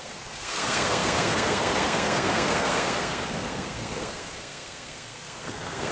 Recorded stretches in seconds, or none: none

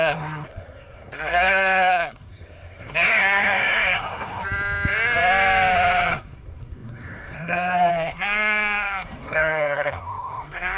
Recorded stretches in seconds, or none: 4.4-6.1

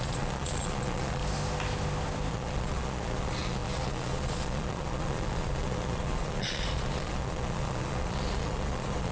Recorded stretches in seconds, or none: 1.2-2.3

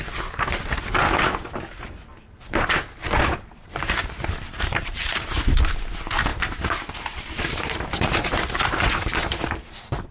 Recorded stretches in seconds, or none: 0.0-2.1; 5.6-6.3

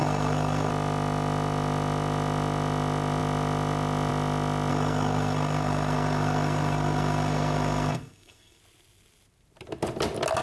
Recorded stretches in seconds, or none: 0.7-4.7; 8.6-10.4

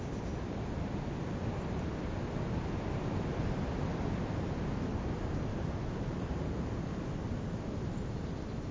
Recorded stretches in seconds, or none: 0.0-5.5; 6.5-8.7

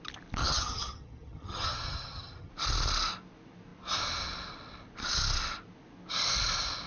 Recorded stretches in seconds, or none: 0.0-0.4; 2.5-6.9

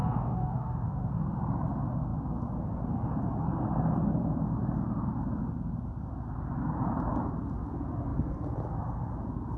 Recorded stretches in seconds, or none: 1.1-9.6